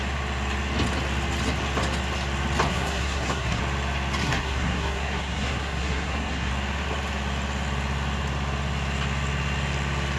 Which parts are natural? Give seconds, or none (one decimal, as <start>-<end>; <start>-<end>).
0.0-2.7; 3.6-4.2; 6.5-10.2